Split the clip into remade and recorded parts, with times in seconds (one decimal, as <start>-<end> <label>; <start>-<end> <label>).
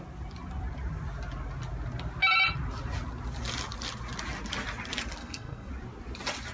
0.0-5.2 recorded; 5.2-5.7 remade; 5.7-6.5 recorded